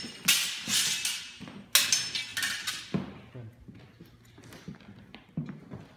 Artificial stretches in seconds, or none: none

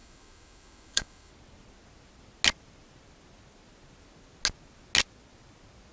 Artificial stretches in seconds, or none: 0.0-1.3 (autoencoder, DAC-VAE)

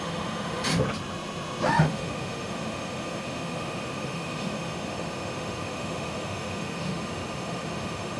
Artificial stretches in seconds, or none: 0.0-0.7 (autoencoder, DAC-VAE); 1.7-8.2

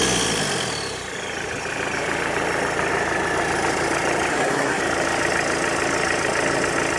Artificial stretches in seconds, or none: 4.3-4.8 (codec, SNAC)

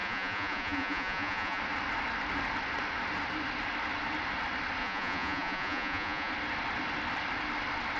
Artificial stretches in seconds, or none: 0.0-1.6 (vocoder, Vocos); 4.8-6.3

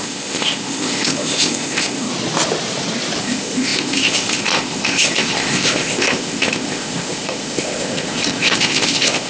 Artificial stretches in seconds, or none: 0.0-2.1 (codec, ZipCodec); 3.2-9.3

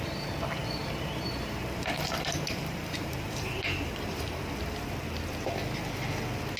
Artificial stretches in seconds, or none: 0.8-4.4 (vocoder, BigVGAN v2)

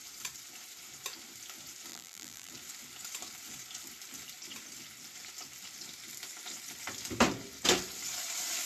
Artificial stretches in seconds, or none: 1.9-2.5 (vocoder, BigVGAN v2)